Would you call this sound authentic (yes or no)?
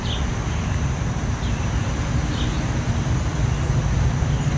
yes